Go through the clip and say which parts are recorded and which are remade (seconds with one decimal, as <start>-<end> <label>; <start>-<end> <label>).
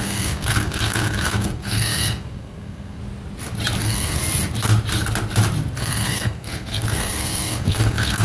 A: 0.0-3.0 remade; 3.0-3.8 recorded; 3.8-4.2 remade; 4.2-5.8 recorded; 5.8-8.2 remade